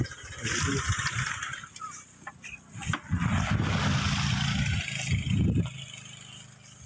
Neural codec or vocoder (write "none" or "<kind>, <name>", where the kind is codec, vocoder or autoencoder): none